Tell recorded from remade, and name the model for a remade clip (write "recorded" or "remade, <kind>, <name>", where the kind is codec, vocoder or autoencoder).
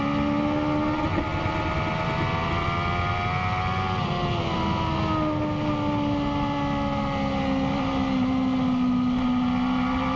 recorded